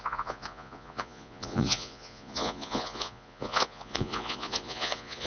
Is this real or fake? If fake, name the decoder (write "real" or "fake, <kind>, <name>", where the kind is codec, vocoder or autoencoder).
fake, vocoder, Vocos